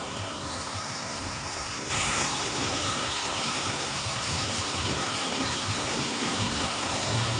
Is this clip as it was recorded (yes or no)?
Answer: no